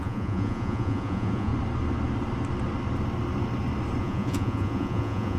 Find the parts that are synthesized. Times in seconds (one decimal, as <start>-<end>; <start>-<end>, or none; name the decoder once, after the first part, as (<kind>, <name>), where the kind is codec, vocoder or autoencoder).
0.0-1.5 (vocoder, Vocos); 4.0-5.4